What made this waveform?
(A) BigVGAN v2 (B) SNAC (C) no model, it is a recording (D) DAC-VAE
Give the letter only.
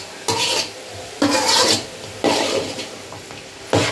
C